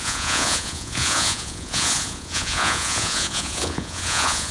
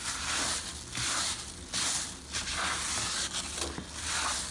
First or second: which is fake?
first